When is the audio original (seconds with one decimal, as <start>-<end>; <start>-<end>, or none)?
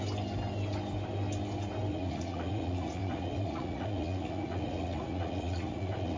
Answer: 0.0-1.9